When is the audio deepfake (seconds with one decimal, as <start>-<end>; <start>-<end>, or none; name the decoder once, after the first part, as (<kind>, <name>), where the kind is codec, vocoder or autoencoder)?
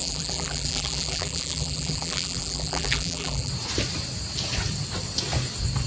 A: 0.0-3.5 (vocoder, BigVGAN v2)